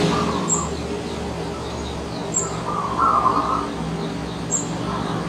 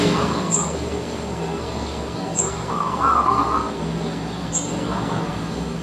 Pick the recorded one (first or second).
first